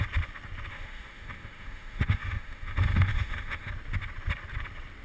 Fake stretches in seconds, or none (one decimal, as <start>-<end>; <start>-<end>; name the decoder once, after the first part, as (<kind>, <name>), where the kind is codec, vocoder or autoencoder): 0.7-3.7 (autoencoder, DAC-VAE)